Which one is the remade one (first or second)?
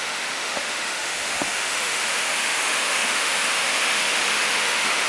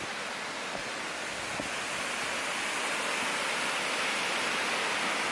first